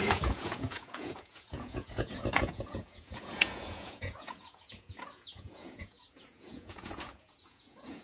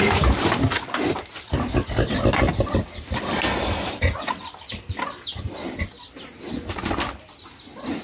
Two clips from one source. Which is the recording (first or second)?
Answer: second